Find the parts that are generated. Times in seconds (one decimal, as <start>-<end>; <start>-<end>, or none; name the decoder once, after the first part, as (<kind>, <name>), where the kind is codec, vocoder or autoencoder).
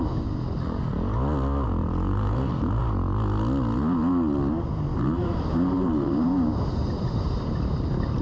1.8-2.8 (vocoder, BigVGAN v2); 4.9-8.2